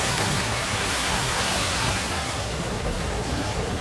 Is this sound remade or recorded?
remade